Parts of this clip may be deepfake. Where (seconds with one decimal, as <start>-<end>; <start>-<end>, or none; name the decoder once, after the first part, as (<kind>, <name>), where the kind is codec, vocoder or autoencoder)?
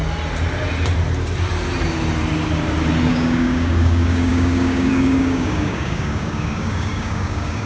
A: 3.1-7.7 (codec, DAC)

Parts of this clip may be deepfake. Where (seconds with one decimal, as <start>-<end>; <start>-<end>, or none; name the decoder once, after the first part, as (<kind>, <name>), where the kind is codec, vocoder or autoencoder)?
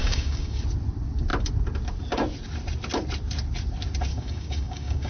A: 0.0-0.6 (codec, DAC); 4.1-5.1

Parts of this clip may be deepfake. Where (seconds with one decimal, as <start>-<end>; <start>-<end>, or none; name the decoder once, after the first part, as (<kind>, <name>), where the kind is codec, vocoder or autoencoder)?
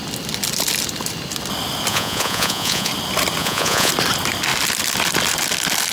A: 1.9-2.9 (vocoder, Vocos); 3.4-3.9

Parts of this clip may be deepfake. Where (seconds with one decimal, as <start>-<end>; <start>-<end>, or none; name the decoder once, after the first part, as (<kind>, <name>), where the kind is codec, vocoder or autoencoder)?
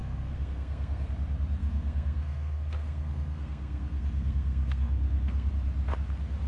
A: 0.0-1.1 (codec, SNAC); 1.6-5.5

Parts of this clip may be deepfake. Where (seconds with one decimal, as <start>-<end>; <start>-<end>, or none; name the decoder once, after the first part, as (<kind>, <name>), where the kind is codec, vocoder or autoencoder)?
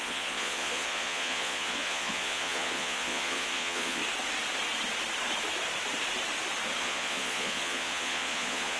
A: 0.0-4.0 (vocoder, Vocos); 6.8-8.8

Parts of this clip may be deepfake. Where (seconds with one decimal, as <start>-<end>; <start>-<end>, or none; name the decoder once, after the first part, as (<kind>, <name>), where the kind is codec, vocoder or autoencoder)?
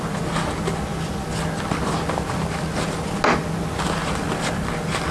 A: none